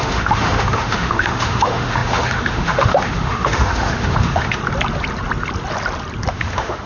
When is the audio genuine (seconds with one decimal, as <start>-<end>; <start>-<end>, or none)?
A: 4.6-6.3